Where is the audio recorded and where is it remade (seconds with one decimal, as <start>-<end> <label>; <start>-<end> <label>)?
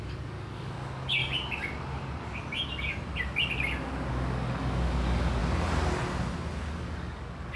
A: 0.0-1.2 remade; 1.2-4.1 recorded; 4.1-5.4 remade; 5.4-6.7 recorded; 6.7-7.6 remade